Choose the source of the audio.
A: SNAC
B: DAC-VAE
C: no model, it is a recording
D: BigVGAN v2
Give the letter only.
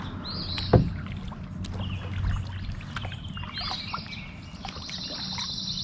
C